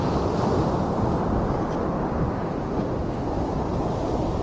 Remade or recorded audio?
recorded